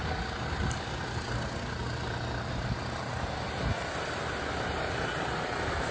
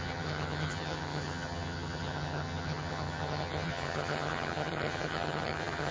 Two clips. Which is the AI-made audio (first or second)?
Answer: second